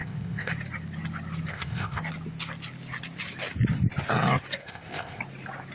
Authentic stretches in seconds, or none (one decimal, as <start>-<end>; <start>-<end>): 0.5-1.5; 2.0-4.6; 5.2-5.7